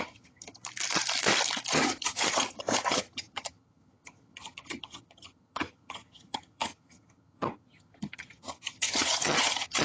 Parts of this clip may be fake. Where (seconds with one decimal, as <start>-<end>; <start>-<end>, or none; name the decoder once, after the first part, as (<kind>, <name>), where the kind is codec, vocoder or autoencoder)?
0.0-0.6 (vocoder, HiFi-GAN); 1.7-9.8